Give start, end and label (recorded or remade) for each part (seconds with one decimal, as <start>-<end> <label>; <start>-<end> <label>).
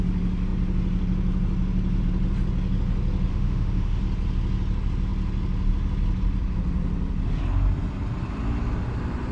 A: 0.0-3.3 recorded; 3.3-4.0 remade; 4.0-9.3 recorded